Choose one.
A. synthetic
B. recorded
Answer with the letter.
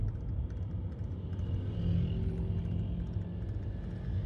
B